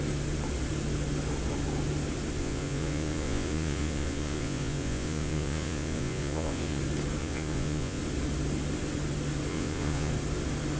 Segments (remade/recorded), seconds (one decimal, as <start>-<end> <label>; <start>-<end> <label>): 0.0-2.4 recorded; 2.4-6.8 remade; 6.8-7.2 recorded; 7.2-8.0 remade; 8.0-9.5 recorded; 9.5-10.1 remade; 10.1-10.8 recorded